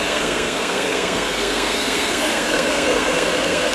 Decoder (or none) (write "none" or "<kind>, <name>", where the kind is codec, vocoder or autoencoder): codec, SNAC